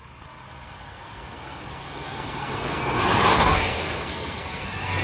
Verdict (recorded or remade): remade